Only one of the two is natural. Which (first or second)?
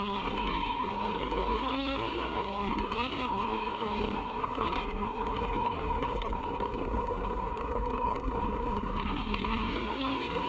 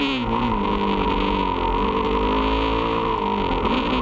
second